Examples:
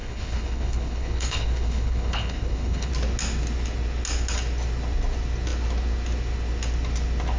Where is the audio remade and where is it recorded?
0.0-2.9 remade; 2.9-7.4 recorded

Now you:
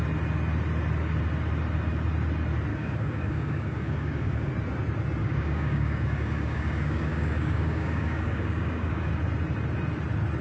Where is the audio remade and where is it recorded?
0.0-2.7 recorded; 2.7-4.5 remade; 4.5-5.2 recorded; 5.2-9.1 remade; 9.1-10.4 recorded